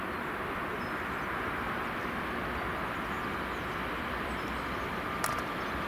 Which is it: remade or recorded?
recorded